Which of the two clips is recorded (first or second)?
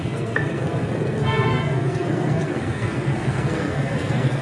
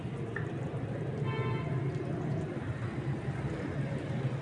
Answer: second